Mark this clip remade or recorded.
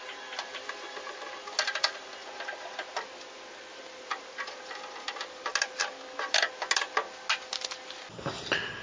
recorded